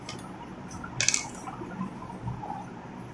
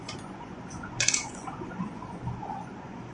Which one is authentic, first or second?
first